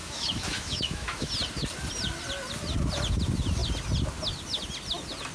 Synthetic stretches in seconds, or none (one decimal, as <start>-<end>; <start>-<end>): 0.0-1.3